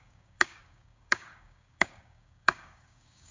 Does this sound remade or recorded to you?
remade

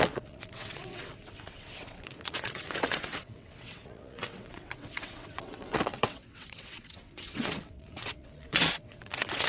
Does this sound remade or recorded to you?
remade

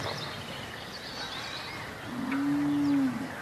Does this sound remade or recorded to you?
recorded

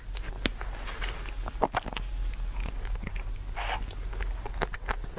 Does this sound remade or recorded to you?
recorded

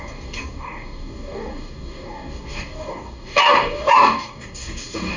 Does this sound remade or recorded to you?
remade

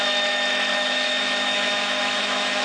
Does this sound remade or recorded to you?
remade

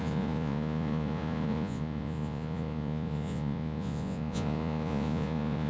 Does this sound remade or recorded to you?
remade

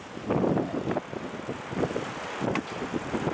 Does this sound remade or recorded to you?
recorded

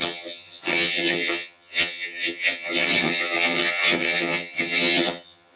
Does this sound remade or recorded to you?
remade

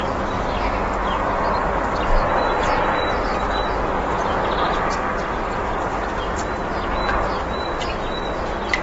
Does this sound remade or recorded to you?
recorded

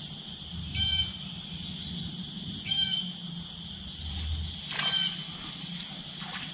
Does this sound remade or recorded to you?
recorded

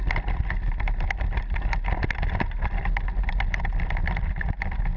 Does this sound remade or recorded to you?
recorded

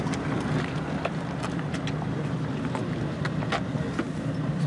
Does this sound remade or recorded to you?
recorded